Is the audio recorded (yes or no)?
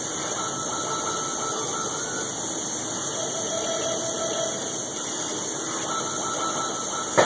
yes